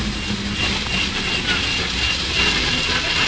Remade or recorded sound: recorded